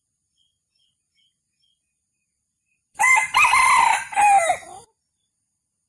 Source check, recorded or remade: recorded